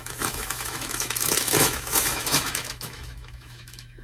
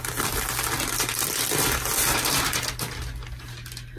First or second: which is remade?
first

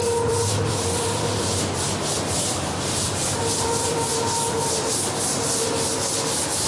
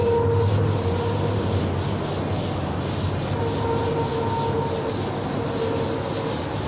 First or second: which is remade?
first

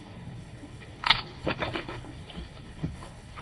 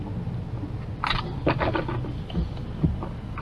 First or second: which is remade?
first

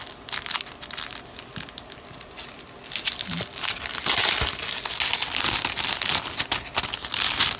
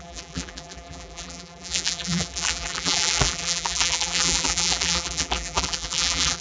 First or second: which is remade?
second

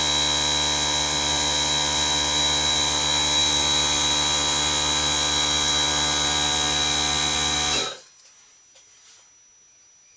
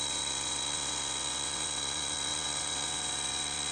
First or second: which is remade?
second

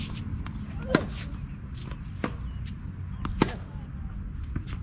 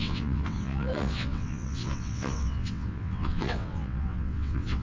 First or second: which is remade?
second